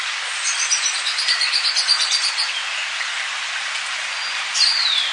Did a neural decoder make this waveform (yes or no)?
no